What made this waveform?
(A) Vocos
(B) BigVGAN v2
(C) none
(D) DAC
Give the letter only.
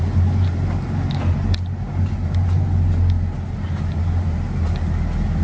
C